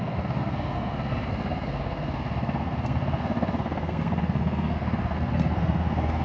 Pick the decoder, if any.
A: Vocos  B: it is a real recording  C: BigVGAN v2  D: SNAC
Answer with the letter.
D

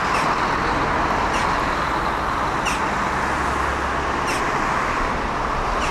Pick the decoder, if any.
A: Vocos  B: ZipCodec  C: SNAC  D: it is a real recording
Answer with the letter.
D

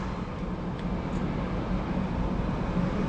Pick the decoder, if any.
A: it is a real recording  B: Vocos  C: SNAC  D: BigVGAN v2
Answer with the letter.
A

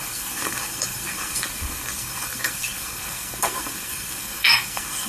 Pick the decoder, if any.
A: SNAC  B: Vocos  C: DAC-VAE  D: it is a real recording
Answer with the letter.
A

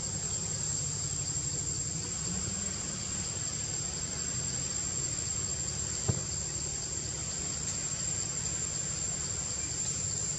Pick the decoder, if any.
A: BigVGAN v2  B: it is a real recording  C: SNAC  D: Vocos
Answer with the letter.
B